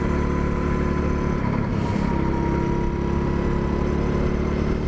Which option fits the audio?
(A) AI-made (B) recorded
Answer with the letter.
B